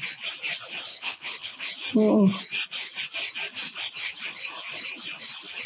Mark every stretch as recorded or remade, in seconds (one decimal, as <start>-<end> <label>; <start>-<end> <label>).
0.0-0.9 recorded; 0.9-1.6 remade; 1.6-5.7 recorded